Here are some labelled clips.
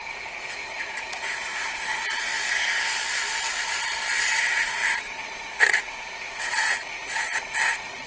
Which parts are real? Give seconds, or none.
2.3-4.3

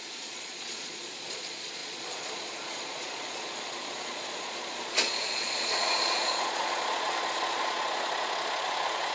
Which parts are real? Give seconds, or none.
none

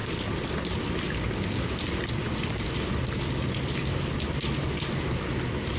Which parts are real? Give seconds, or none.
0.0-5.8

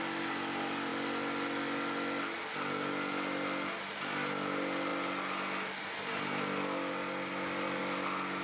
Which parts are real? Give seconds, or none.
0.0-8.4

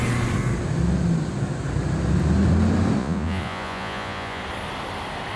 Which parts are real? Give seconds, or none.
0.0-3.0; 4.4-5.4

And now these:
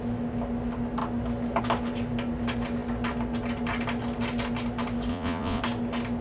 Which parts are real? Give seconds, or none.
0.0-5.1; 5.6-6.2